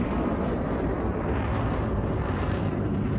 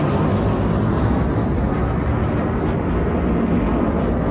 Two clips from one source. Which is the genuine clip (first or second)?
second